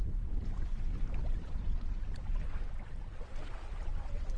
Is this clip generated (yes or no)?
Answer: no